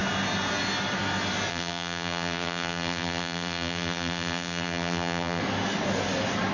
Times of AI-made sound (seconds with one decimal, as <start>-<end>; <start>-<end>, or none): 1.5-5.4